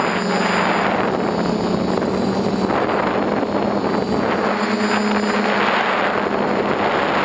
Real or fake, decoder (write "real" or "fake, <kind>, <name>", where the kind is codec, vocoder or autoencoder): real